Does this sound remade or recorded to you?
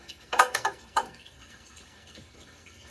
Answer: remade